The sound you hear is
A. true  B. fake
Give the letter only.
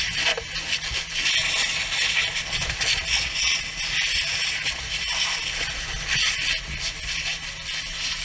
A